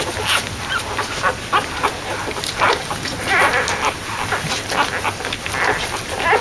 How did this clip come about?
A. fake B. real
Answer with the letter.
B